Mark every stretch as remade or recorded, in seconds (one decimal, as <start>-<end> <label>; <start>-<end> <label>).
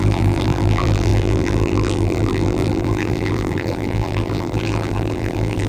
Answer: 0.0-5.7 remade